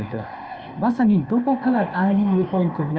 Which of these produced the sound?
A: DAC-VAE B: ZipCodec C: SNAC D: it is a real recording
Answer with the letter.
B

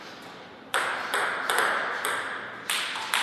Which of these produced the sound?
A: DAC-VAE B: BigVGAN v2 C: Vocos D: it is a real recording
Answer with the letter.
D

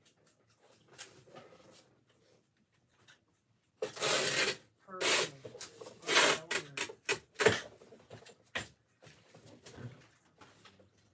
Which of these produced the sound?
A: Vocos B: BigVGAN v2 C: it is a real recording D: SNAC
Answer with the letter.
C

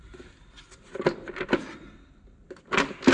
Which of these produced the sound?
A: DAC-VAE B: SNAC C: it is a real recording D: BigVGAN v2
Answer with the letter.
C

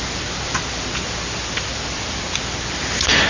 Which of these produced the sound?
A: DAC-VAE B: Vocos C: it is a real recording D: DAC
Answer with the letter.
C